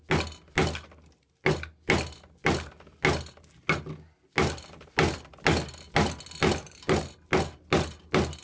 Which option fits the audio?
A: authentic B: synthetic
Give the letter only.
A